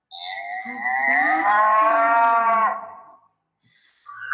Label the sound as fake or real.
real